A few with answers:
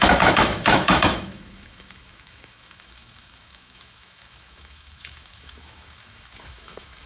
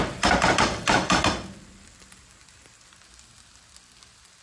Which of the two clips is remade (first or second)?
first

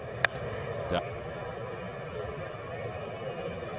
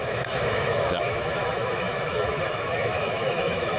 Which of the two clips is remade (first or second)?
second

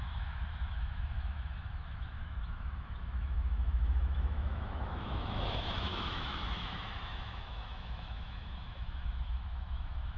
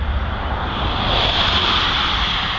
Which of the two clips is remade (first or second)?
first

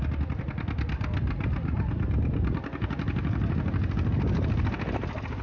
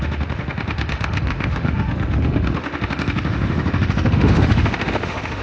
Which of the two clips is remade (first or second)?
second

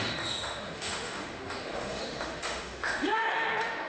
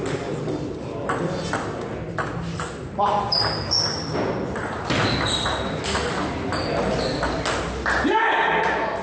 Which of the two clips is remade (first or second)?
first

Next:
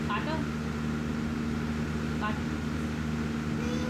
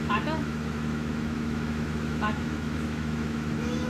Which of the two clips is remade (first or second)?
second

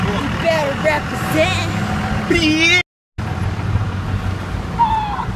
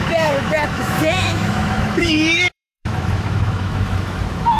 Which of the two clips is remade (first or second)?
second